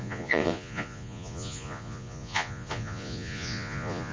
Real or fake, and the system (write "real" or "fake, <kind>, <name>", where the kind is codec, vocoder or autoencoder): fake, vocoder, Vocos